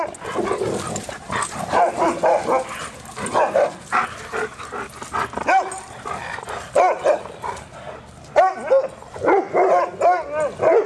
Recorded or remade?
recorded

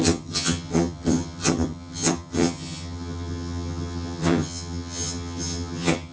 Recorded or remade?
remade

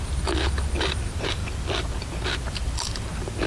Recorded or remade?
recorded